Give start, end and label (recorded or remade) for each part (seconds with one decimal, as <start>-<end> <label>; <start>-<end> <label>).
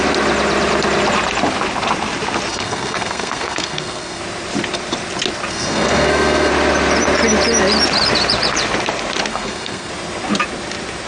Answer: 0.0-2.5 recorded; 2.5-4.2 remade; 4.2-5.5 recorded; 5.5-6.5 remade; 6.5-9.3 recorded; 9.3-9.9 remade; 9.9-11.1 recorded